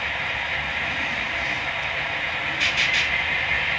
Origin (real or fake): fake